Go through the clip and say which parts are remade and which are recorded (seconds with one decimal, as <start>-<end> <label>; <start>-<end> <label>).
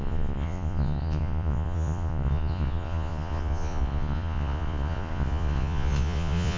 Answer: 0.0-6.6 remade